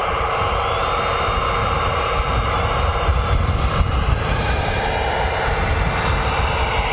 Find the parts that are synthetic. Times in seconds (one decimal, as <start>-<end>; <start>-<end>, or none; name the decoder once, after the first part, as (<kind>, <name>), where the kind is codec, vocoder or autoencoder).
1.6-5.7 (vocoder, BigVGAN v2)